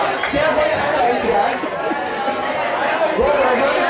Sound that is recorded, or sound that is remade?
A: recorded